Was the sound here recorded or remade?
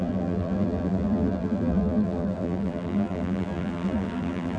remade